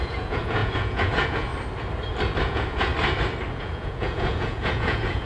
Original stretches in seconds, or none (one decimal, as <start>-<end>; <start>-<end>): 1.5-2.4; 2.9-3.5